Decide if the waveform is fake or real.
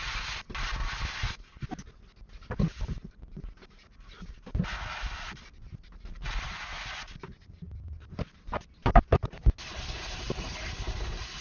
real